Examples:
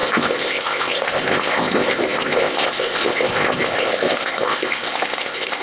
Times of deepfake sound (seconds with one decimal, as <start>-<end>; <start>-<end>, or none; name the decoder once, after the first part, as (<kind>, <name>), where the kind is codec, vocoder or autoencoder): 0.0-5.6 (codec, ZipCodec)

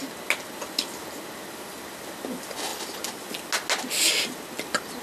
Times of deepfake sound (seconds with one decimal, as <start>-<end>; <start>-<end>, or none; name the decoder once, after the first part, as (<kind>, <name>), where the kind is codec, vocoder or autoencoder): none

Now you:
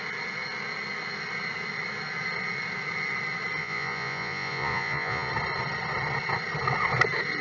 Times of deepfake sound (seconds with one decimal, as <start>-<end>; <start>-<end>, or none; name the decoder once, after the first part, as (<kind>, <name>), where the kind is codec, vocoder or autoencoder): 3.6-5.3 (vocoder, Vocos)